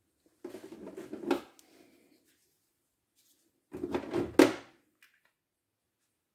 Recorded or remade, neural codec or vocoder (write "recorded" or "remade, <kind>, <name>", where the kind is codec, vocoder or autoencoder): recorded